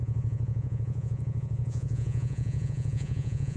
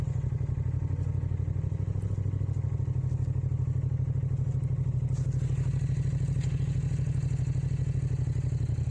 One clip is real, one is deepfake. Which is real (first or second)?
second